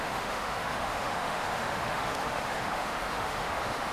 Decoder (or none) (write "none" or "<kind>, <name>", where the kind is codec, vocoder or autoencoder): autoencoder, DAC-VAE